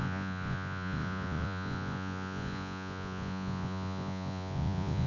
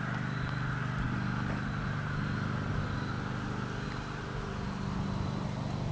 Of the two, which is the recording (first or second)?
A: second